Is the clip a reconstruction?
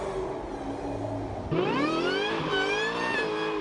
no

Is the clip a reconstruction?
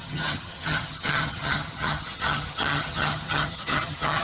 yes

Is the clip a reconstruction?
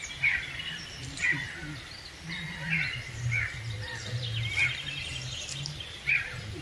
no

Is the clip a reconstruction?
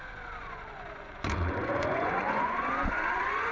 yes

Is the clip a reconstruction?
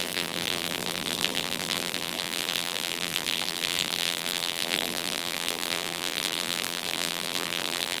yes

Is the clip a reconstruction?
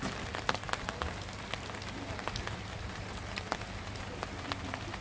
no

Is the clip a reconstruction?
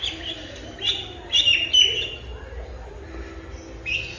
no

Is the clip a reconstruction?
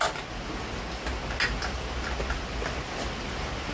no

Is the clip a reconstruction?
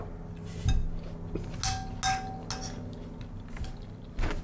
no